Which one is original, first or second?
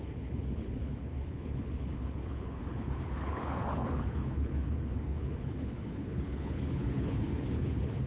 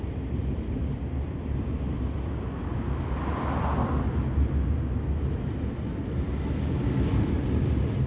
second